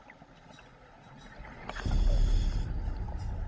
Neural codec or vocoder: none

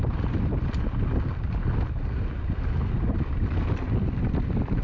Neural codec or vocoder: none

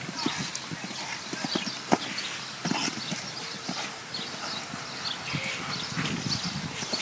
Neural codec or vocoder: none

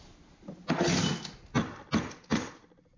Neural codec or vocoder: none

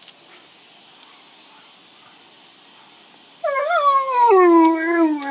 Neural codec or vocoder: none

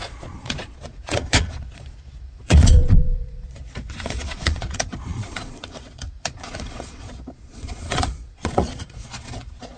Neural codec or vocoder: vocoder, Vocos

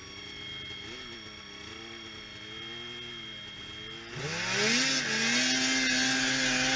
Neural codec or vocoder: none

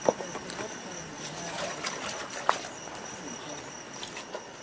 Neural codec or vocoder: none